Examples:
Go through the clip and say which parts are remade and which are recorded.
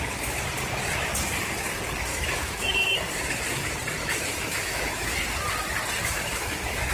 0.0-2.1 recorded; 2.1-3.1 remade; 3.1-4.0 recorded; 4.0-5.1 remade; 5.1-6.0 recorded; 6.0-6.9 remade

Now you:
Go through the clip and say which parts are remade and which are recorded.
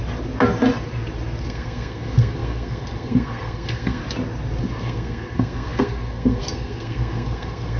0.0-1.4 recorded; 1.4-4.0 remade; 4.0-4.6 recorded; 4.6-7.8 remade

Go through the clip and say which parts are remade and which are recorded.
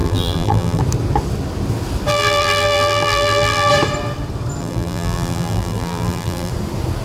0.0-0.8 remade; 0.8-2.1 recorded; 2.1-3.7 remade; 3.7-4.6 recorded; 4.6-6.5 remade; 6.5-7.0 recorded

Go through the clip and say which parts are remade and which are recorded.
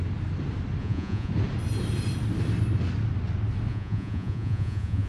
0.0-0.8 recorded; 0.8-1.3 remade; 1.3-3.7 recorded; 3.7-5.1 remade